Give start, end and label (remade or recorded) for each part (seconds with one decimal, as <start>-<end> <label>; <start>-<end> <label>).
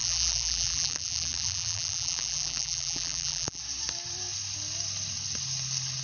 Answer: 0.0-3.6 remade; 3.6-6.0 recorded